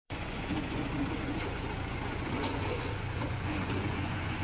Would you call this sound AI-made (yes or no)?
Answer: yes